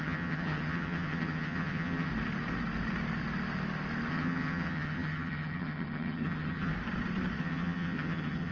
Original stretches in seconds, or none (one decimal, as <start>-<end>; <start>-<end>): 2.1-4.1; 6.7-7.4